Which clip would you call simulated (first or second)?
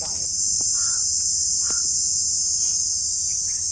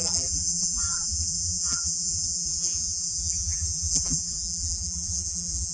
second